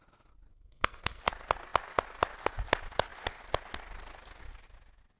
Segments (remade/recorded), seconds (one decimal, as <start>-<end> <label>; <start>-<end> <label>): 0.0-0.5 recorded; 0.5-1.2 remade; 1.2-5.2 recorded